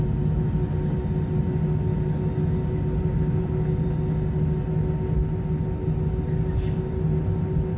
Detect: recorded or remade recorded